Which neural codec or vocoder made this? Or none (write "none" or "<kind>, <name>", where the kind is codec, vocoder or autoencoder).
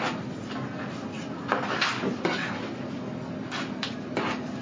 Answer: none